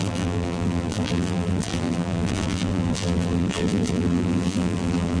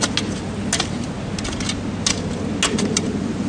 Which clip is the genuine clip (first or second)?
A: second